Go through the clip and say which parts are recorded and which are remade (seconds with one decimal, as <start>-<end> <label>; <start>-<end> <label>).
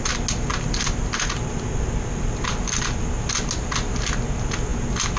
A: 0.0-5.2 recorded